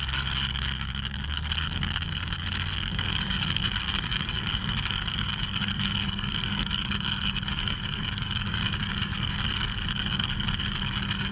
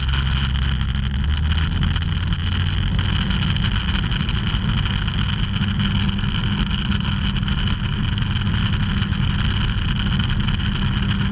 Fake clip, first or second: first